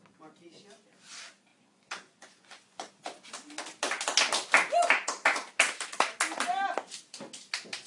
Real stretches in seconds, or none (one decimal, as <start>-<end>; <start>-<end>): 0.0-1.5; 2.9-7.9